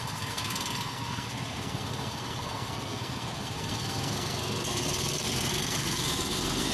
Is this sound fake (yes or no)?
yes